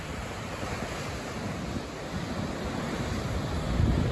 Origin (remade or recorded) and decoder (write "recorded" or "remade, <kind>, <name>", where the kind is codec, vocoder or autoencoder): recorded